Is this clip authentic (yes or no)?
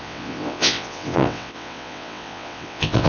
no